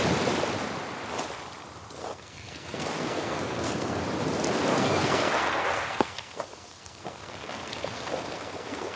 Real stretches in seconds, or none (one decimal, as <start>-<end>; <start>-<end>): 0.0-2.0; 4.0-4.7